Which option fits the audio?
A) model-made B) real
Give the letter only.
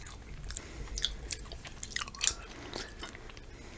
B